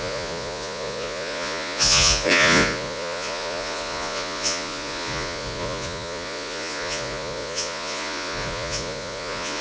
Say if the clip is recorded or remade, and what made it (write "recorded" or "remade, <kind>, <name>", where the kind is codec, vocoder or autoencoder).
remade, vocoder, Vocos